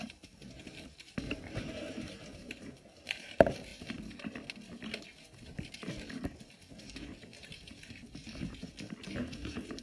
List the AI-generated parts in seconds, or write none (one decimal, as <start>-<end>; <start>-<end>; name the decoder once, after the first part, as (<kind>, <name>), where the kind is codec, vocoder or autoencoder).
0.0-3.7 (vocoder, BigVGAN v2); 7.4-8.2; 9.2-9.8